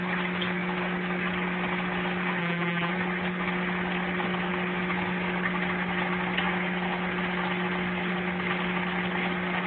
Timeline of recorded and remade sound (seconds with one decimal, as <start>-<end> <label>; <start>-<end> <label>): 0.0-2.4 recorded; 2.4-2.9 remade; 2.9-9.7 recorded